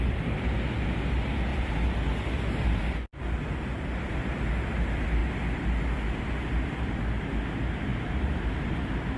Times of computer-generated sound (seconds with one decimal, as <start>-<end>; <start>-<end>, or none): none

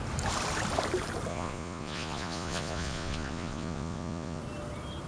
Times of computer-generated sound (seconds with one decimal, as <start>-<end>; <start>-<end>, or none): 1.3-4.4

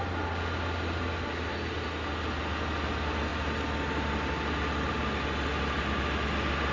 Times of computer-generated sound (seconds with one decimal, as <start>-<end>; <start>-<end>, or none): none

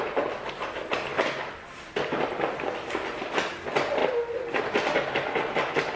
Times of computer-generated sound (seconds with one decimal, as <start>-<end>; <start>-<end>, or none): none

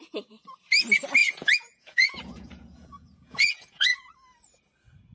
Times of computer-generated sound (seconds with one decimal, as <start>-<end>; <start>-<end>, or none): 1.2-4.1